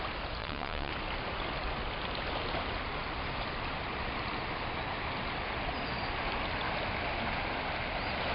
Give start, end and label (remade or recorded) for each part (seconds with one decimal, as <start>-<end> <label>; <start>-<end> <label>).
0.0-0.4 recorded; 0.4-0.9 remade; 0.9-8.3 recorded